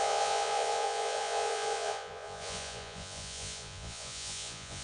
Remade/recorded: remade